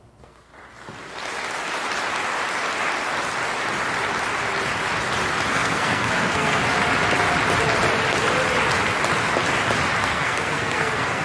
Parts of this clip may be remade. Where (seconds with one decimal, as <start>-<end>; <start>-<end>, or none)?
0.0-0.5; 5.5-6.6; 10.0-11.2